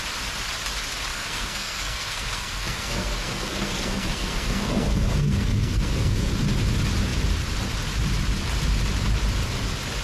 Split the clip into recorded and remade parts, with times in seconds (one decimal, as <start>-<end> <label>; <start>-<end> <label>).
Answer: 0.0-1.1 recorded; 1.1-6.3 remade; 6.3-10.0 recorded